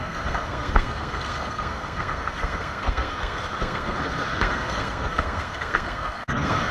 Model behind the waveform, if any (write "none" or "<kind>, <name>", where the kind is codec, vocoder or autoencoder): codec, SNAC